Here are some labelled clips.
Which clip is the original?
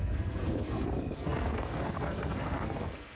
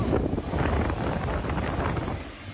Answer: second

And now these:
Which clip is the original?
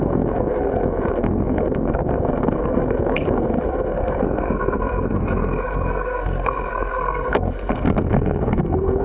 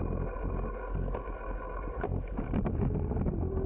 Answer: second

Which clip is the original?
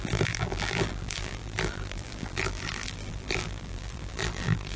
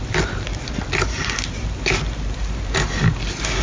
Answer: second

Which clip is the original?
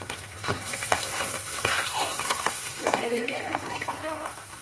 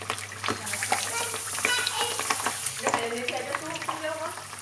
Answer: second